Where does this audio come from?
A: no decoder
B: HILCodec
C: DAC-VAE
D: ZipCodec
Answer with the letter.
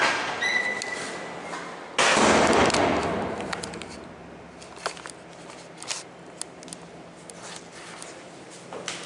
A